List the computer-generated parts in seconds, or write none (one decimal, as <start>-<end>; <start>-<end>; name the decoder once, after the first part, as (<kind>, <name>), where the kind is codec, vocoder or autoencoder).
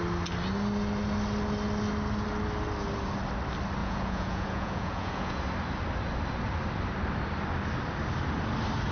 3.8-5.4 (vocoder, Vocos)